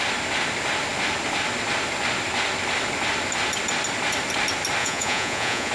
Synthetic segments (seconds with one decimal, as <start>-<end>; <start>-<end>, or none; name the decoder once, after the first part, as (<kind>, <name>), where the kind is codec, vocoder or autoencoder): 4.8-5.7 (vocoder, Vocos)